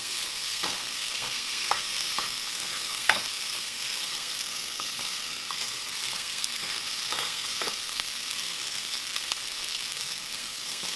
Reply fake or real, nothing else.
fake